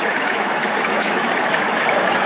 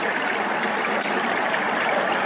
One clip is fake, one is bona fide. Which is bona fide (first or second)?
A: second